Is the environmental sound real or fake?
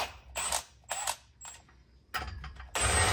real